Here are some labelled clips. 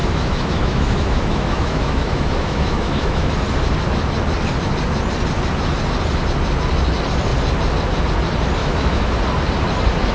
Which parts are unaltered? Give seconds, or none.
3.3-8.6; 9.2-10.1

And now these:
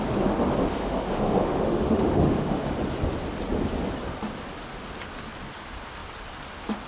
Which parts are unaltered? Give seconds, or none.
0.0-0.8; 2.7-6.9

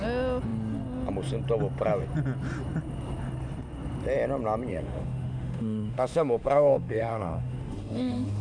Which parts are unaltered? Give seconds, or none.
0.0-4.7

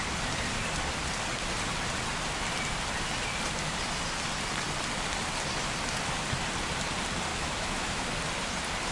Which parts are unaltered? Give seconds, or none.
0.0-7.3; 8.1-8.9

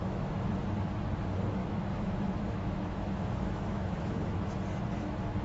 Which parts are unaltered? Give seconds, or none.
0.5-1.6; 4.6-5.4

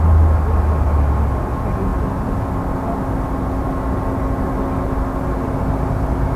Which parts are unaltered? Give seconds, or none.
0.0-6.4

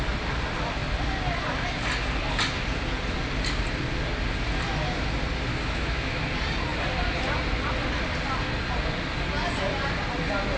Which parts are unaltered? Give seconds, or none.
0.0-5.5; 6.2-10.6